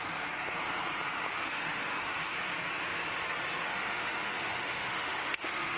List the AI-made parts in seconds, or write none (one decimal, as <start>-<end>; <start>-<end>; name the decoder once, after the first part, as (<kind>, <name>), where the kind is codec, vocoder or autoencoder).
1.3-2.2 (autoencoder, DAC-VAE); 3.6-5.8